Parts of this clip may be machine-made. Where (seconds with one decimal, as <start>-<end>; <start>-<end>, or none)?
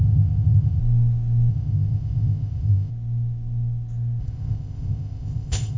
0.0-0.8; 1.5-2.9; 4.2-5.8